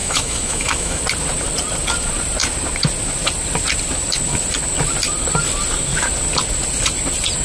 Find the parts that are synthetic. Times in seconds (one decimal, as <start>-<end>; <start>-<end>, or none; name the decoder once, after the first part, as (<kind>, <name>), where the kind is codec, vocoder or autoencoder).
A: 0.0-1.0 (autoencoder, DAC-VAE)